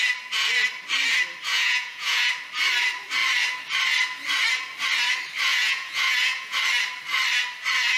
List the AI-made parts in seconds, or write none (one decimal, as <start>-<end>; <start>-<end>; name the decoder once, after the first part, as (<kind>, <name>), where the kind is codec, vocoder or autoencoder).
1.5-2.3 (vocoder, Vocos); 5.5-6.6